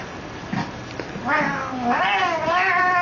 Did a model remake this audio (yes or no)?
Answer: no